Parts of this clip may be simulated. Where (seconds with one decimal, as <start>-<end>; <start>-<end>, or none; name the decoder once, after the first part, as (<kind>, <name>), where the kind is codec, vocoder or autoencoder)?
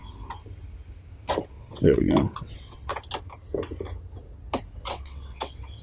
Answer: 1.4-2.9 (vocoder, WaveNeXt); 4.9-5.8